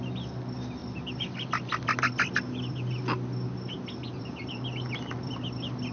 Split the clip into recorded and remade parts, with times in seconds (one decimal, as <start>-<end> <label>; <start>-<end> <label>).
0.0-5.9 recorded

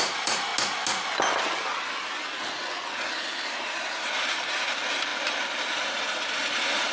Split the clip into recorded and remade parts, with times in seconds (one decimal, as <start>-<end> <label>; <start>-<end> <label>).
0.0-0.5 remade; 0.5-3.1 recorded; 3.1-6.9 remade

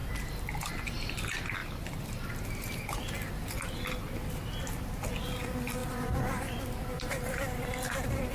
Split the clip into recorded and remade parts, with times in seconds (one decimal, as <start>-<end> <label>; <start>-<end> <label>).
0.0-1.6 recorded; 1.6-2.3 remade; 2.3-5.8 recorded; 5.8-6.6 remade; 6.6-8.3 recorded

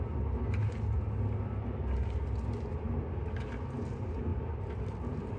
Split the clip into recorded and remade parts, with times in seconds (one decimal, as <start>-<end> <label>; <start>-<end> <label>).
0.0-4.3 recorded; 4.3-5.4 remade